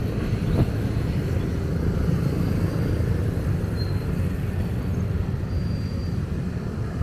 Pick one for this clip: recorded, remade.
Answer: recorded